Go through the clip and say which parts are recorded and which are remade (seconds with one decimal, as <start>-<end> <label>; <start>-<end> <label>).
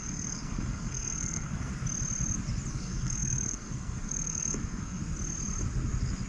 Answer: 0.0-1.7 remade; 1.7-2.7 recorded; 2.7-5.0 remade; 5.0-6.3 recorded